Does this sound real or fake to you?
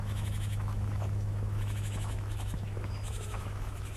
fake